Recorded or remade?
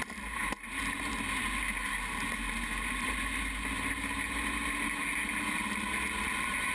recorded